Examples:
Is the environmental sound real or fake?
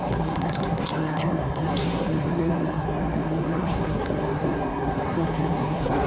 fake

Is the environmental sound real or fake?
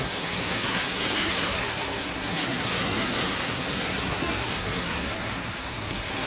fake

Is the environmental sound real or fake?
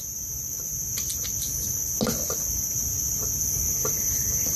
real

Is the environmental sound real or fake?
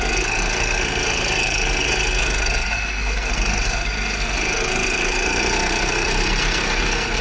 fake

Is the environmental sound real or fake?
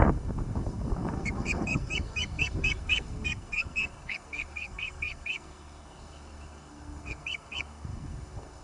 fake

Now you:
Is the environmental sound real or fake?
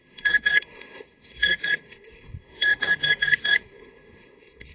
fake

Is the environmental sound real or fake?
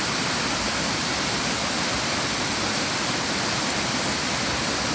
real